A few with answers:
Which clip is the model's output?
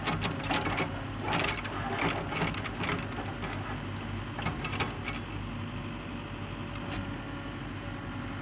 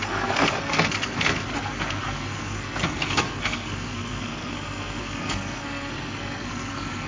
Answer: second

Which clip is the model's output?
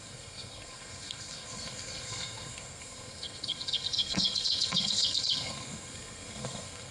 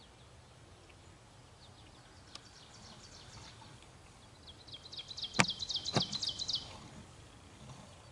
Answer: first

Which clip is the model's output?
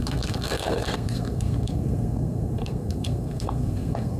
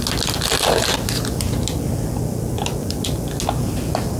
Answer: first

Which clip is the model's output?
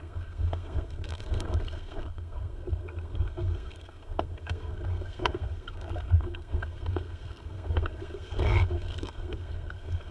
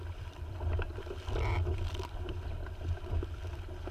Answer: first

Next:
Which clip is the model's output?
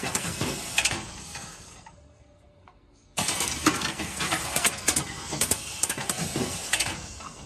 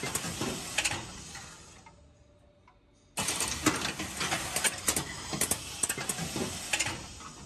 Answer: first